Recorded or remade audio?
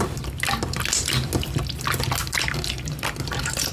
recorded